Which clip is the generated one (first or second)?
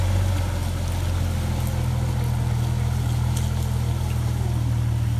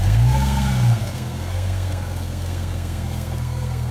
second